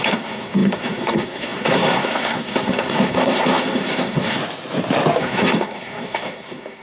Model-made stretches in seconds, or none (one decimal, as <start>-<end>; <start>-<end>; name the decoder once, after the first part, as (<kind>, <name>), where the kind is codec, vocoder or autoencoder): 0.0-4.4 (codec, SNAC); 5.2-6.8